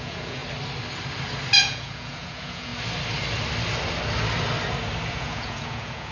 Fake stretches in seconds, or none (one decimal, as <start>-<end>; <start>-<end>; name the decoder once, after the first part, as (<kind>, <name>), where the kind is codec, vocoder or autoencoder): 0.0-0.4 (vocoder, Vocos); 1.6-2.7; 5.1-6.1